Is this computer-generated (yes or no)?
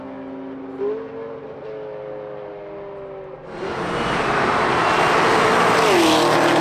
no